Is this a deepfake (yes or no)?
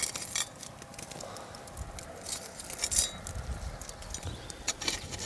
no